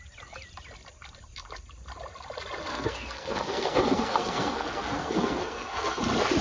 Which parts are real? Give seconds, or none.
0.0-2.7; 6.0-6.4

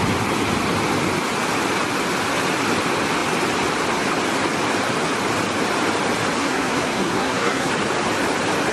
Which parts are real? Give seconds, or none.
0.0-6.4; 7.7-8.7

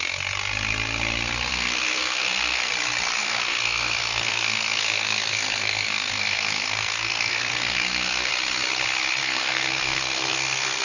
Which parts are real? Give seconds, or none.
0.0-1.5; 2.7-3.2; 8.3-9.2

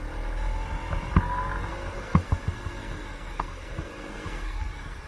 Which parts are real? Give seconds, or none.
0.0-1.7

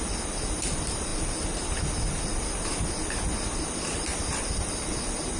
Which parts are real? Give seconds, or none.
0.0-5.4

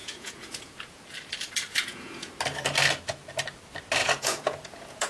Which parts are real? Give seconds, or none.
1.0-1.7; 2.3-4.0

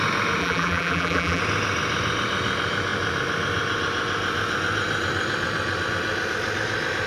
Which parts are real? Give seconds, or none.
0.0-0.4; 1.4-7.1

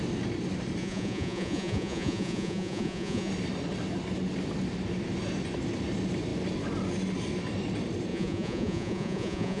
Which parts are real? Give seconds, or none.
0.0-0.8; 3.3-8.1